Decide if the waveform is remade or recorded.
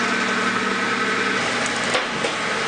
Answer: recorded